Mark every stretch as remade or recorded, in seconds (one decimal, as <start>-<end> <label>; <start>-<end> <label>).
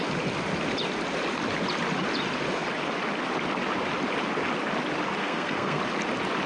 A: 0.0-5.2 recorded; 5.2-5.8 remade; 5.8-6.5 recorded